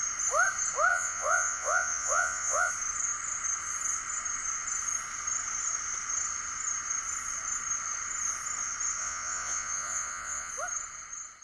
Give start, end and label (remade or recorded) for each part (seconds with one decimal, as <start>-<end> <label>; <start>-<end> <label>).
0.0-0.9 recorded; 0.9-2.7 remade; 2.7-9.0 recorded; 9.0-10.5 remade; 10.5-11.4 recorded